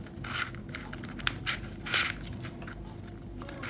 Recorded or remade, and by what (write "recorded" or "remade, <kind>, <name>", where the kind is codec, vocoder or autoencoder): recorded